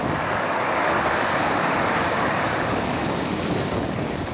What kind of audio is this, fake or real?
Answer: fake